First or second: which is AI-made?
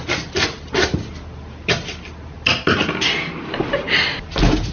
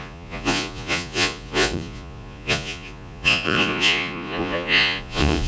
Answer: second